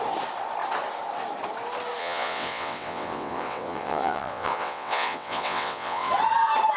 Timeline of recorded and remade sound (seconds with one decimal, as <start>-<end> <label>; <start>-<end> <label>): 0.0-2.0 recorded; 2.0-6.1 remade; 6.1-6.8 recorded

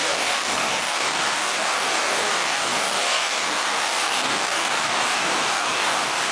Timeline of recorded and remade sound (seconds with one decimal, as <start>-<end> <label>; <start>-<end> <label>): 0.0-6.3 remade